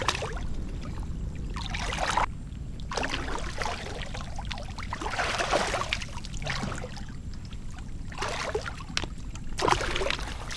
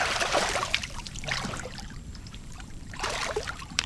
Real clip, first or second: first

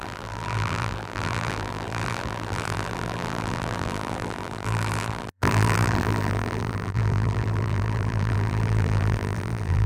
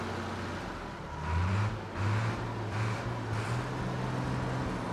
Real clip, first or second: second